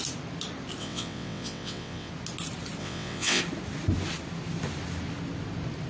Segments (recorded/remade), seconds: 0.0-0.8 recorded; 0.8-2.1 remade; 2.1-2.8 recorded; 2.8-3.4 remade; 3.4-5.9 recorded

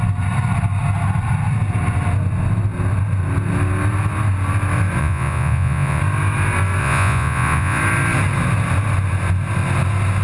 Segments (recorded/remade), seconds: 0.0-5.0 recorded; 5.0-6.0 remade; 6.0-6.8 recorded; 6.8-7.8 remade; 7.8-10.2 recorded